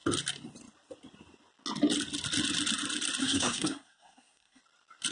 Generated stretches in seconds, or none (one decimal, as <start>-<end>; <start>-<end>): 3.2-4.6

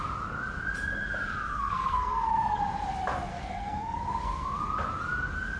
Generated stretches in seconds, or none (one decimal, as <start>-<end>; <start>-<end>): 1.5-2.6; 3.3-4.6

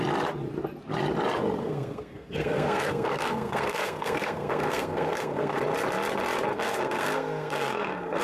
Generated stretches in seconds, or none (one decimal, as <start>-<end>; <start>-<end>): 1.6-5.6; 6.5-8.2

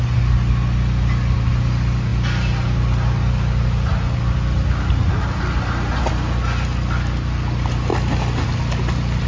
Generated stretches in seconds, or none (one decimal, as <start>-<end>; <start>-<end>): none

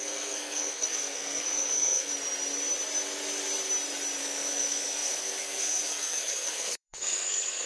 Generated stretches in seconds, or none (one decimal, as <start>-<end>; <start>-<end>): 0.0-2.1; 4.2-7.7

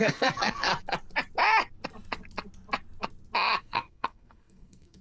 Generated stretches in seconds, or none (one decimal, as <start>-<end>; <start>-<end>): 0.0-0.7; 3.6-5.0

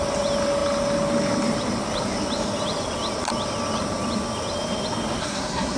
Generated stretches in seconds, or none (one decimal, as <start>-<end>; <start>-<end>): 5.2-5.8